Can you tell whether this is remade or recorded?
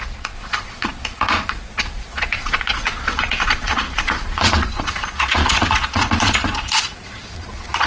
remade